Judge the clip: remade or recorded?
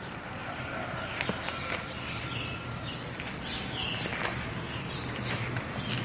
recorded